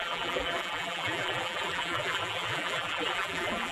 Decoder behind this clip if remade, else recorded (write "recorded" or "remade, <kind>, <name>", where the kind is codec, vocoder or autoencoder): remade, vocoder, BigVGAN v2